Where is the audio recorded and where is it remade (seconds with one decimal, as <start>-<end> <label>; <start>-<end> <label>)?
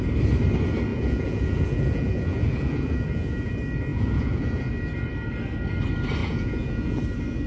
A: 0.0-0.9 recorded; 0.9-3.5 remade; 3.5-3.9 recorded; 3.9-4.7 remade; 4.7-6.2 recorded; 6.2-7.0 remade; 7.0-7.5 recorded